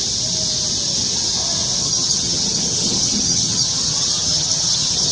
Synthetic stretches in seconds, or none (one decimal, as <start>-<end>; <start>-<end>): 1.8-5.1

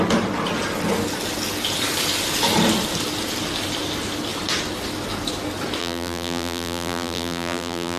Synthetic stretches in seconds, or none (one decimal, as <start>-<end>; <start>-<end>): 5.8-8.0

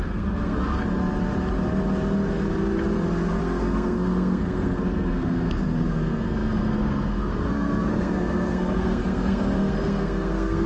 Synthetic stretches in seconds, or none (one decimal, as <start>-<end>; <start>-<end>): 0.0-0.7; 3.4-10.7

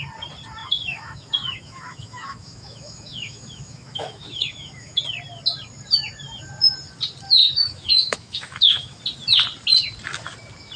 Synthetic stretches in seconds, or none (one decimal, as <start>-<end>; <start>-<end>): 0.6-5.0; 7.4-9.0